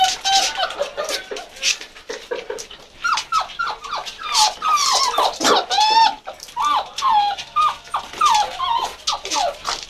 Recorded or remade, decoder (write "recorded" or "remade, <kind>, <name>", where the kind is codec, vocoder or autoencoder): recorded